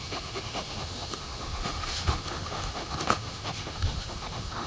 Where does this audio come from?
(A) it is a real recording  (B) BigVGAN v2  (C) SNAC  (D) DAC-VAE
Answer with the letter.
D